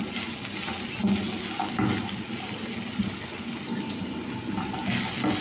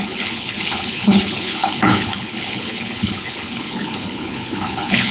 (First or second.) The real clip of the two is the first